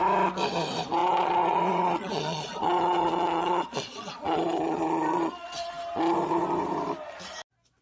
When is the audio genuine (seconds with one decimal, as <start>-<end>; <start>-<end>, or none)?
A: 0.0-1.0; 5.7-7.8